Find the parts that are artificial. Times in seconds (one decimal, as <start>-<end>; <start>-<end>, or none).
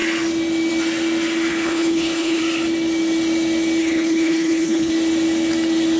1.5-2.4; 3.8-4.9